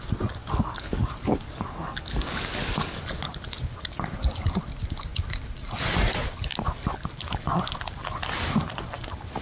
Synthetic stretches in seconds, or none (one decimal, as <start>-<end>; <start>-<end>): 0.4-3.0